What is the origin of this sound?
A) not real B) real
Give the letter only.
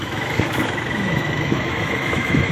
A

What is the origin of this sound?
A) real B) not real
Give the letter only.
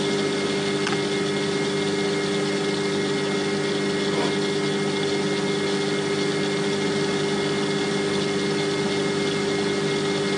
A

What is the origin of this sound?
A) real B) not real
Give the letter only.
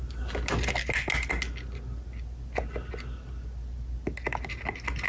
A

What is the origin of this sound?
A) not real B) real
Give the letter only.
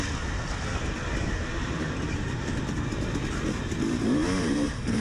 A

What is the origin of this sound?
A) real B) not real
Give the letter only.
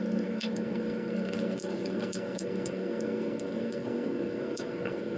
B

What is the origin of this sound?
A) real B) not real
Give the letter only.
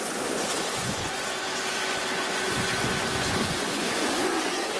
B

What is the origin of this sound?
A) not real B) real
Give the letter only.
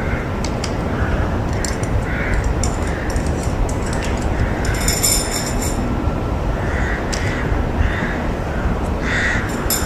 B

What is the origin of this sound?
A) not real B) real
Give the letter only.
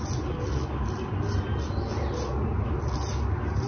B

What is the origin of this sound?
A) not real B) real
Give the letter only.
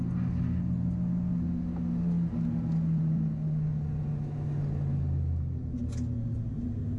B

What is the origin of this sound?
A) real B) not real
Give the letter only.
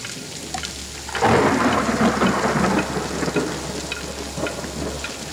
A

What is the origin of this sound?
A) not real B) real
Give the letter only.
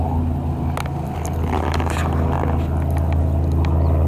B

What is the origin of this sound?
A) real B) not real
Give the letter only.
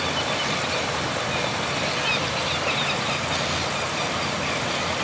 A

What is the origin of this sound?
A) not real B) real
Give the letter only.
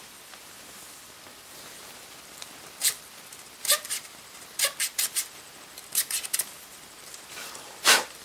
A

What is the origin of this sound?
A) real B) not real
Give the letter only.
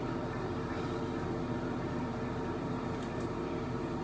A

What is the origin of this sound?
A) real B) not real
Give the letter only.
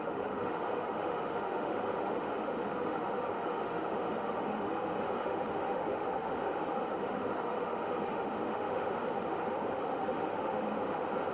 B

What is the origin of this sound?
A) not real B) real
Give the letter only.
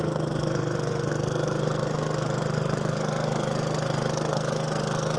A